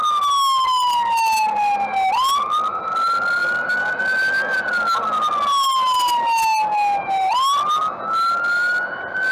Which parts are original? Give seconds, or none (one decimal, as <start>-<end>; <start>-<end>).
0.0-9.3